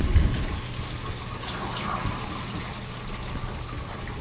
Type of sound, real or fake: real